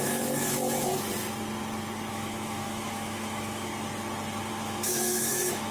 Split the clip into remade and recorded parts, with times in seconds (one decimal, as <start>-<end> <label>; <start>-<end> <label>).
0.0-0.9 remade; 0.9-2.1 recorded; 2.1-3.7 remade; 3.7-4.5 recorded; 4.5-5.7 remade